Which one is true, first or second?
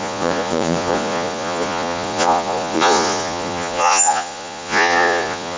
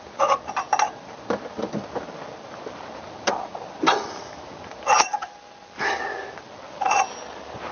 second